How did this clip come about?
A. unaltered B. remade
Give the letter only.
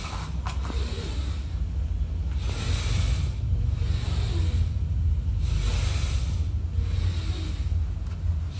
A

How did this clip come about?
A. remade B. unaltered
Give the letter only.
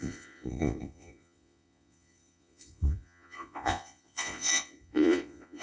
A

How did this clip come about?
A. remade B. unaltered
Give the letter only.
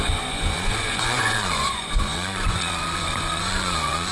A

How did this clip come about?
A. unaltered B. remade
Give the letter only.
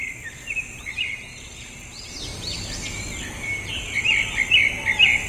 A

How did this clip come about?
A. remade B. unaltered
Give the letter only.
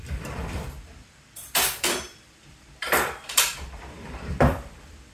A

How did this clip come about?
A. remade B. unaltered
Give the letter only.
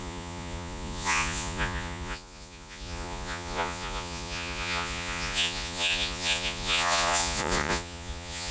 A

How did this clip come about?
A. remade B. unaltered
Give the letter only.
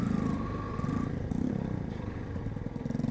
A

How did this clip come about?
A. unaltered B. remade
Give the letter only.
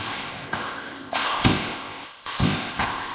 B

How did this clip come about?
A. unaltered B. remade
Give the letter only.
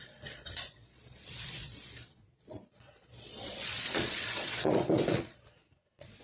B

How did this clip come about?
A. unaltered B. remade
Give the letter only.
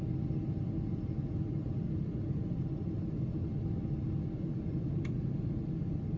A